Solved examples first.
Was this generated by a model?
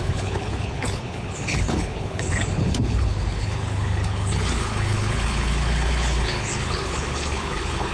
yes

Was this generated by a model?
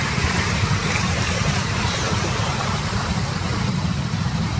yes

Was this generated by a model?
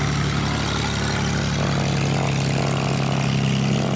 no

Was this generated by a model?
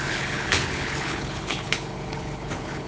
yes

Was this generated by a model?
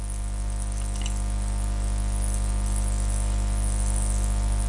no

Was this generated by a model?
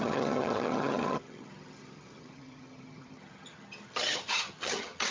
yes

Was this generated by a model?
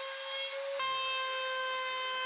no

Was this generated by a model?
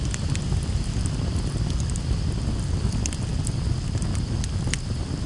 no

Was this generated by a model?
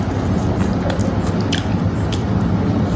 no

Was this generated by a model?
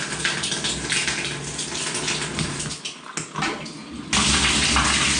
no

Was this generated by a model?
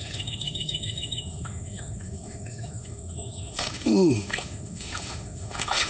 yes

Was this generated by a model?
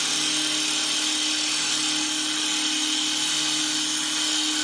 no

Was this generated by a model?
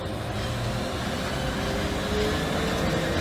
no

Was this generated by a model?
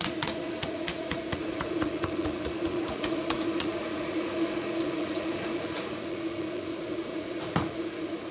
yes